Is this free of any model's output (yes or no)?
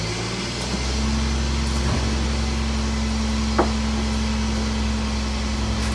yes